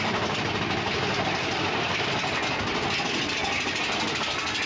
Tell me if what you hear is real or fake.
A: real